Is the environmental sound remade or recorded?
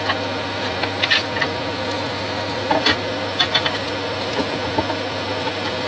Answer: recorded